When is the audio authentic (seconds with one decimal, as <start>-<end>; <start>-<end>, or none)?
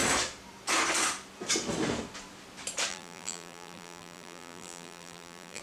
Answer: 0.0-2.9